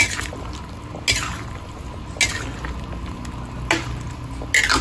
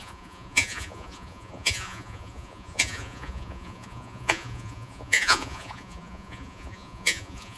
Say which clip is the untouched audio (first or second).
first